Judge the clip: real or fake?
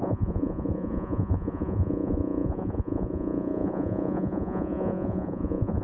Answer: fake